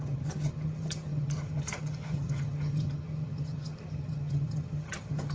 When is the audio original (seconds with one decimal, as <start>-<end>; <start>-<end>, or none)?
none